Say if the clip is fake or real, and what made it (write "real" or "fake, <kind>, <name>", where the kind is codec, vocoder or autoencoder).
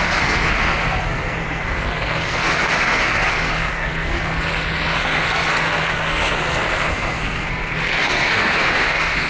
fake, codec, SNAC